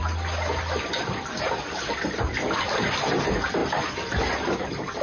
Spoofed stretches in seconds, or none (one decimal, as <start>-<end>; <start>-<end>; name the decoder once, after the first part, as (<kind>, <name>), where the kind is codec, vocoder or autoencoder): none